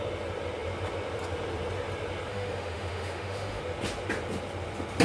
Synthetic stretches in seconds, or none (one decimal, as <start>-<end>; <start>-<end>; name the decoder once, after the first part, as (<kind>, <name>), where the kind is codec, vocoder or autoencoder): 2.3-3.6 (autoencoder, DAC-VAE)